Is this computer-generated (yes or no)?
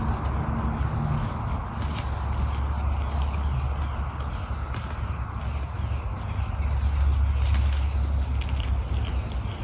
no